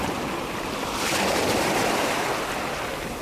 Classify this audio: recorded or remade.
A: recorded